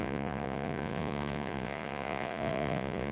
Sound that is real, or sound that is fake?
fake